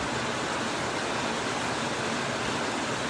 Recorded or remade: recorded